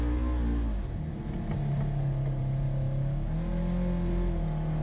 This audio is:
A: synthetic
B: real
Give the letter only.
B